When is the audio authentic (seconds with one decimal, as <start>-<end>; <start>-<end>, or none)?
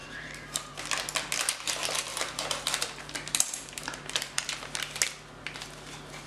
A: 0.8-2.1; 4.8-6.3